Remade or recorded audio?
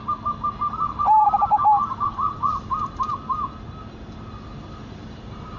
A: recorded